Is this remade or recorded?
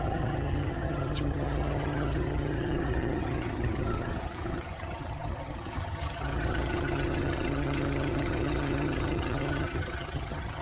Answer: remade